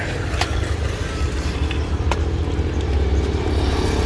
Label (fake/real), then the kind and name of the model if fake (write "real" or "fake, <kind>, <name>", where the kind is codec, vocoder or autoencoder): real